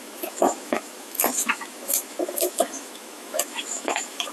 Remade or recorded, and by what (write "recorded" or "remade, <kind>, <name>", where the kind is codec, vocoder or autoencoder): remade, autoencoder, DAC-VAE